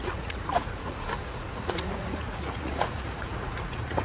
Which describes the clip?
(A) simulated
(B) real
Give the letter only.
A